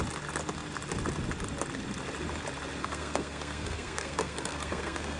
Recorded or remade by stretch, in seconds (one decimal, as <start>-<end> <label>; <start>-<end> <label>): 0.0-2.8 recorded; 2.8-5.2 remade